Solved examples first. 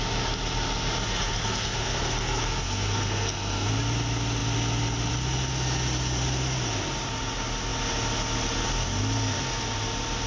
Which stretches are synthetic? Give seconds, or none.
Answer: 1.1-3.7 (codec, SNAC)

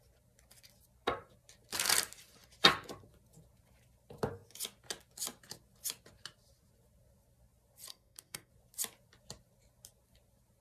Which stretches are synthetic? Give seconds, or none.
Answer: 7.9-8.5 (codec, SNAC)

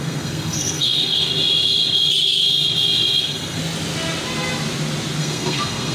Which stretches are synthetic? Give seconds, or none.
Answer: 0.0-1.3 (codec, SNAC); 3.2-3.6; 5.2-5.9

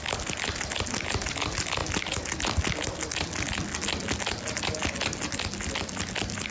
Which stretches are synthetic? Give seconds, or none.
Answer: none